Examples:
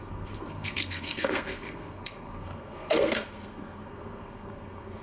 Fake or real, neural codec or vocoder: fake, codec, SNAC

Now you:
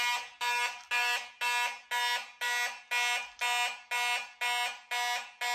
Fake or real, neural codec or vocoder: real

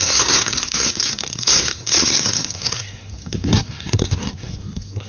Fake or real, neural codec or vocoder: fake, codec, SNAC